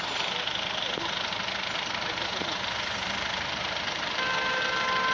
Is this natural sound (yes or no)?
yes